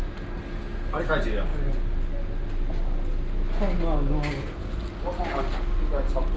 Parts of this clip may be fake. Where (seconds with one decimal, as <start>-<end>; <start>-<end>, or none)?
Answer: none

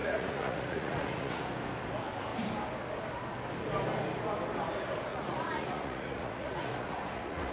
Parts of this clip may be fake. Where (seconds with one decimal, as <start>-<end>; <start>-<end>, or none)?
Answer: 0.0-1.4; 5.1-7.5

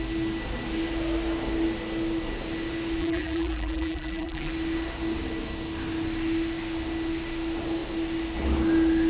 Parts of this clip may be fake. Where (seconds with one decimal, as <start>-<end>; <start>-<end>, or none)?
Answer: 3.0-4.5